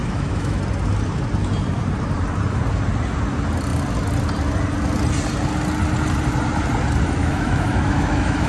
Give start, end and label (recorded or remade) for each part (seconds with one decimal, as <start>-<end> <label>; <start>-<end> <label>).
0.0-0.6 remade; 0.6-7.2 recorded; 7.2-8.5 remade